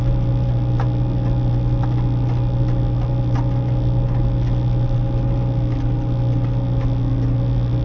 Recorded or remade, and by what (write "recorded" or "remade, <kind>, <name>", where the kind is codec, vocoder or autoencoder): recorded